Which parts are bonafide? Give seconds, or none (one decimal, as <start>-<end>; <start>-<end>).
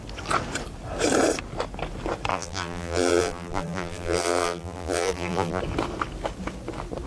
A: 0.0-2.3; 5.6-7.1